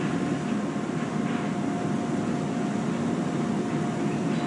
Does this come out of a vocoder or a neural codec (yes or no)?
no